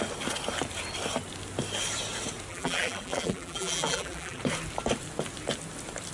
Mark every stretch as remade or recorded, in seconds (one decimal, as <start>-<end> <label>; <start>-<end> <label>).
0.0-2.5 recorded; 2.5-4.4 remade; 4.4-6.1 recorded